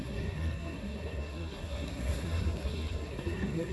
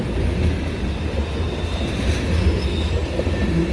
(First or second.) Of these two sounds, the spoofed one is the first